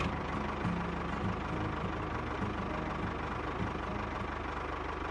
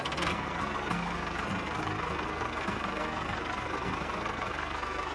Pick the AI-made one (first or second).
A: second